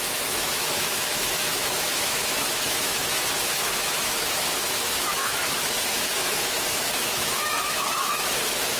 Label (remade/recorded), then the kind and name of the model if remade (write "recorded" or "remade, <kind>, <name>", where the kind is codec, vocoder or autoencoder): remade, autoencoder, DAC-VAE